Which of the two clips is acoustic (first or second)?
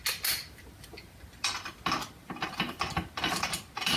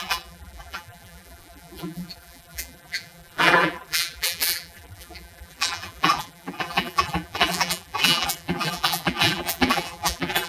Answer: first